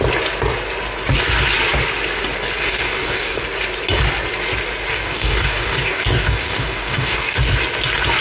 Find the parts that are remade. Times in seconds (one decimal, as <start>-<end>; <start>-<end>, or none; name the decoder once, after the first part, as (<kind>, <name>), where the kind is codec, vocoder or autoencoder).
2.6-3.4 (codec, DAC); 4.9-7.5